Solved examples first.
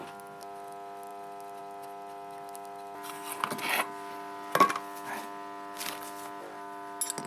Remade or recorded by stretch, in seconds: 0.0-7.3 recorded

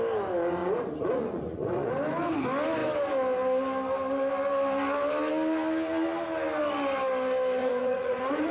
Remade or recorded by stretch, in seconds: 0.0-0.6 recorded; 0.6-1.9 remade; 1.9-7.6 recorded; 7.6-8.5 remade

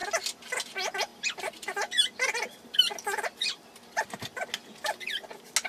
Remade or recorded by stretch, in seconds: 0.0-5.7 recorded

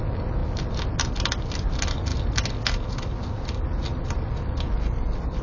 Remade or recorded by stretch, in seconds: 0.0-5.4 recorded

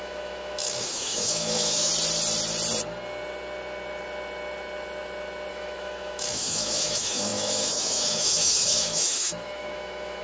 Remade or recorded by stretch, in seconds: 0.0-1.9 remade; 1.9-5.5 recorded; 5.5-10.2 remade

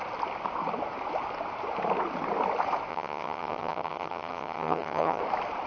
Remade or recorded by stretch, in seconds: 0.0-2.9 recorded; 2.9-5.2 remade; 5.2-5.7 recorded

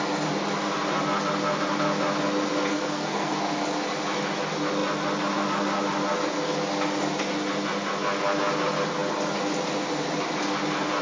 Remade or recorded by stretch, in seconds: 0.0-2.7 recorded; 2.7-3.4 remade; 3.4-11.0 recorded